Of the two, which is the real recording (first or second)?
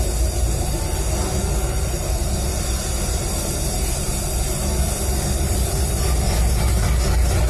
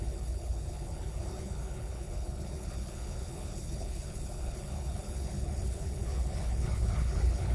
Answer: first